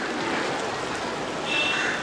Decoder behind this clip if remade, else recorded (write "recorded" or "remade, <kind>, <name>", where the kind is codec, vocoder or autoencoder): recorded